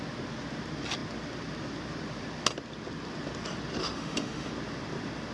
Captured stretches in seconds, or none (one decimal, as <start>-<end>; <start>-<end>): 0.0-3.8; 4.5-5.3